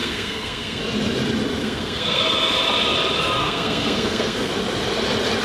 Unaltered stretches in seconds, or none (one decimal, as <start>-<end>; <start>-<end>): 0.8-1.6; 2.2-3.4; 4.5-5.4